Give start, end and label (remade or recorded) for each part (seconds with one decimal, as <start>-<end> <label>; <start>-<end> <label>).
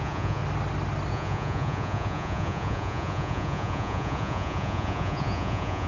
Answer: 0.0-0.4 remade; 0.4-1.1 recorded; 1.1-5.9 remade